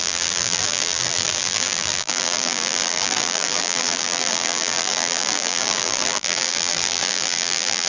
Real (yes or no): no